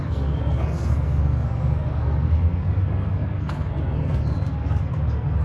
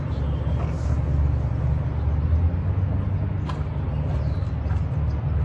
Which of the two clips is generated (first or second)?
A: first